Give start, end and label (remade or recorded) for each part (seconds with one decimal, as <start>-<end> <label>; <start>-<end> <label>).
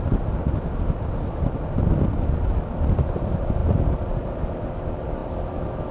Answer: 0.0-5.9 recorded